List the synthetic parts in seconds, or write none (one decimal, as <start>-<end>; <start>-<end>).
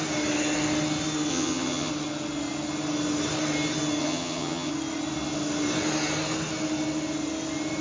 1.3-1.9; 4.0-4.7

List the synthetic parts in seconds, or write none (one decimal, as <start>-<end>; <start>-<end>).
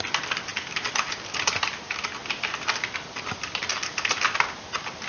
none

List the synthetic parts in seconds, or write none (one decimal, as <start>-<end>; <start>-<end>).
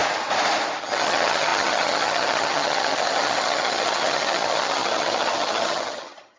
0.8-6.4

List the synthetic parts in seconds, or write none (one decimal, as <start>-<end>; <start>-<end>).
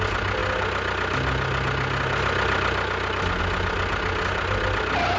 none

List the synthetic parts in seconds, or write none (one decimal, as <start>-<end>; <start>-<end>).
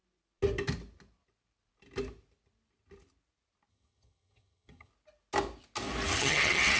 3.7-4.9; 6.2-6.8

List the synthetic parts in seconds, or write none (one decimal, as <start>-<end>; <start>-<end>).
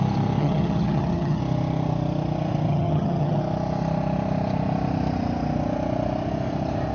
0.4-1.4; 2.7-3.4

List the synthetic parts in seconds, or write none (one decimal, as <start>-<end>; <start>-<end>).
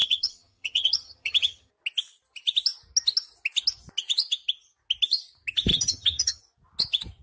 0.0-1.7; 5.7-6.4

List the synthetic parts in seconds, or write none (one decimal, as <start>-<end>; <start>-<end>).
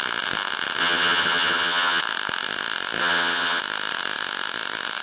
0.8-2.0; 3.0-3.6